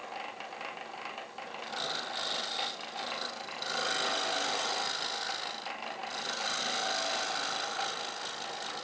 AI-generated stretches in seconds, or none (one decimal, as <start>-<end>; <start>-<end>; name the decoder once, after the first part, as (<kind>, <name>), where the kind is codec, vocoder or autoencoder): none